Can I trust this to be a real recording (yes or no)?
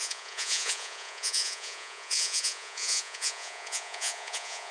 no